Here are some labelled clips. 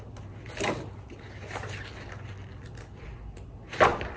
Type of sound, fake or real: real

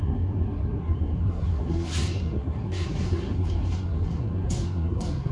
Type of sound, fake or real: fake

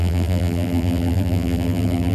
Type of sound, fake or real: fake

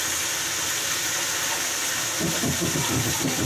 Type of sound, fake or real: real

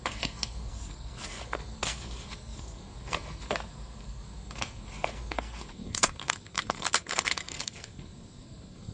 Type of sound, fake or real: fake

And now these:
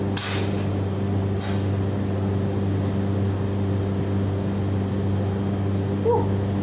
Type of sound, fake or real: real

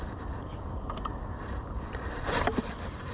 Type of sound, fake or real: fake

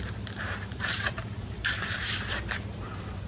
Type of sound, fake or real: fake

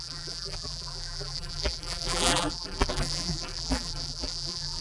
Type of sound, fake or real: fake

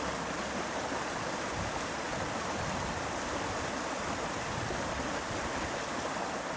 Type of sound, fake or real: real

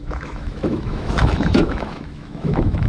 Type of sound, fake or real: fake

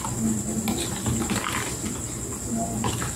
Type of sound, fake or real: real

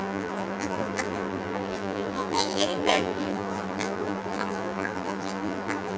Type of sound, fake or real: fake